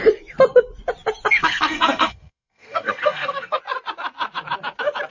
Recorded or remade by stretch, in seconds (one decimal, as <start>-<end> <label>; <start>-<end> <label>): 0.0-1.4 recorded; 1.4-3.6 remade; 3.6-5.1 recorded